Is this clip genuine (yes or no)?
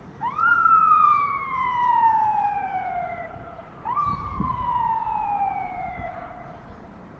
no